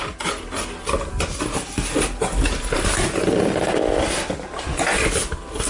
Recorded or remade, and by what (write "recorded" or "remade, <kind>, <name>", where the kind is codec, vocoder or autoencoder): recorded